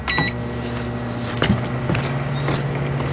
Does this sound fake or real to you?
real